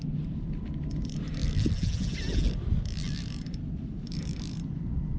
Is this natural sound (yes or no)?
no